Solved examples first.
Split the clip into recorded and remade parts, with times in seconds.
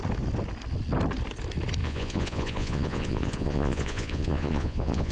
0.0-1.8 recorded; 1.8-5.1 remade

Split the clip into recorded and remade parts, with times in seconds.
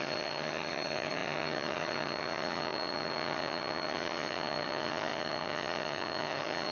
0.0-6.7 remade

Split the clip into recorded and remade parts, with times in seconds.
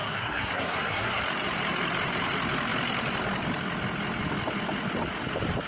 0.0-1.2 remade; 1.2-5.7 recorded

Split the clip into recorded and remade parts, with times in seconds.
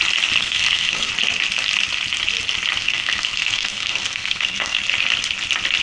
0.0-0.4 recorded; 0.4-1.1 remade; 1.1-2.8 recorded; 2.8-4.8 remade; 4.8-5.8 recorded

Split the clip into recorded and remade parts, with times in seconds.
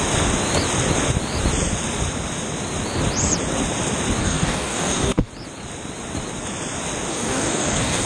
0.0-4.2 recorded; 4.2-5.3 remade; 5.3-7.1 recorded; 7.1-8.1 remade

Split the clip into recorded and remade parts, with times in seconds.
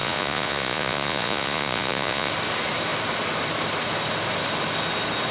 0.0-2.3 remade; 2.3-5.3 recorded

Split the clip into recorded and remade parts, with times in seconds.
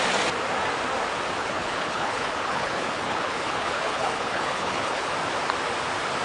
0.0-1.4 recorded; 1.4-5.1 remade; 5.1-6.2 recorded